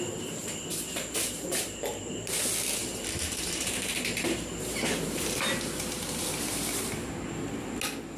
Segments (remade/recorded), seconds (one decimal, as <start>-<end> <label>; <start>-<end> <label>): 0.0-0.4 recorded; 0.4-2.4 remade; 2.4-2.8 recorded; 2.8-7.3 remade; 7.3-8.2 recorded